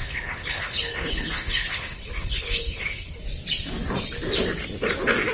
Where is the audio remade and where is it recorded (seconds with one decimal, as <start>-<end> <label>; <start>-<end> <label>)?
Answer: 0.0-3.2 remade; 3.2-5.3 recorded